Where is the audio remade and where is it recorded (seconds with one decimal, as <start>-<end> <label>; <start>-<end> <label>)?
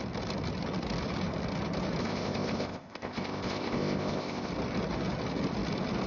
0.0-2.0 recorded; 2.0-4.5 remade; 4.5-6.1 recorded